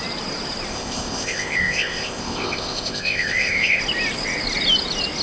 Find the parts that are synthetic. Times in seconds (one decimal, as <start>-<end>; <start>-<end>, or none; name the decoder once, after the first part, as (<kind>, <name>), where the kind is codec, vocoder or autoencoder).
0.7-3.8 (codec, ZipCodec)